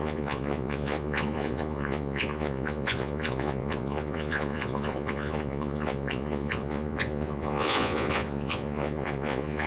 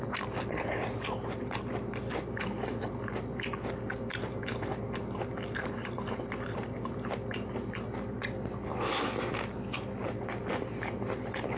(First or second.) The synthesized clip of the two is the first